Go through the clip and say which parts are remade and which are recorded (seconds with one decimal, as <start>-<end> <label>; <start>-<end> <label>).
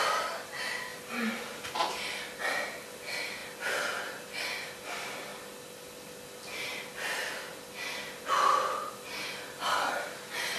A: 0.0-10.6 recorded